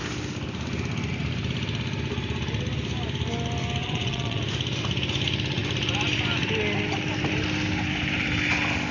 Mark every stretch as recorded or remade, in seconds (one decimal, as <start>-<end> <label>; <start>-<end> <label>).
0.0-3.8 recorded; 3.8-4.4 remade; 4.4-8.9 recorded